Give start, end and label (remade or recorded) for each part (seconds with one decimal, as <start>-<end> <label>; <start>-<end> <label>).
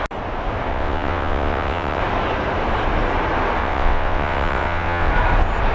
0.0-0.7 recorded; 0.7-2.0 remade; 2.0-3.6 recorded; 3.6-5.1 remade; 5.1-5.7 recorded